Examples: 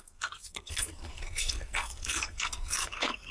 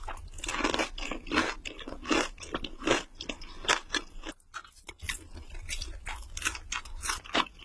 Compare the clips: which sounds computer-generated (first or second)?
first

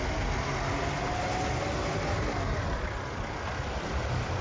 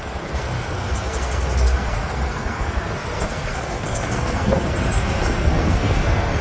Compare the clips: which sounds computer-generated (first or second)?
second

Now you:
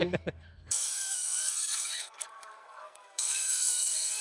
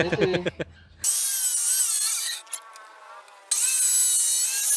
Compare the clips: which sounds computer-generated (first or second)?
first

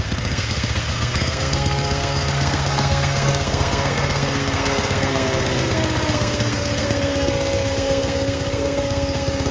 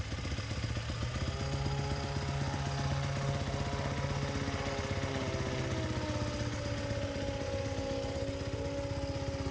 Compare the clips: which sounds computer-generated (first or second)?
first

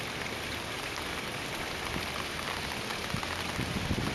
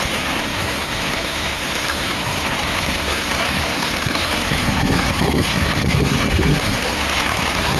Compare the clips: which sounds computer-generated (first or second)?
second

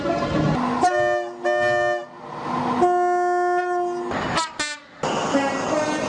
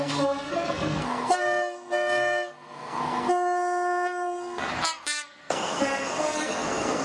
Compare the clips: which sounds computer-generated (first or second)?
second